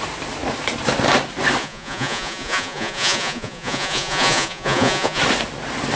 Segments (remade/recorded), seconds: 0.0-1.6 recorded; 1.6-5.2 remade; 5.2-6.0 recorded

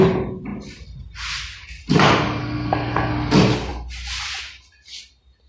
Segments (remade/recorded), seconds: 0.0-2.4 recorded; 2.4-3.1 remade; 3.1-5.5 recorded

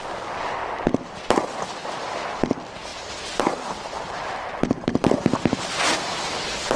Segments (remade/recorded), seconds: 0.0-2.9 recorded; 2.9-6.8 remade